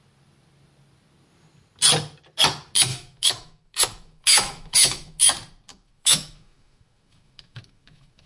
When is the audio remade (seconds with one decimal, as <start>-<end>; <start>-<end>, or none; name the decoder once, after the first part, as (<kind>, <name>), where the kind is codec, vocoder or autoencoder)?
2.9-5.2 (autoencoder, DAC-VAE); 5.7-8.3